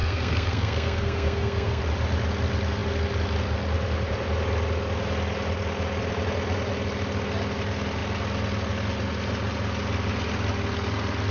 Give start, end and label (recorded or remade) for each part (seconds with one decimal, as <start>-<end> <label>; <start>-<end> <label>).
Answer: 0.0-1.8 remade; 1.8-11.3 recorded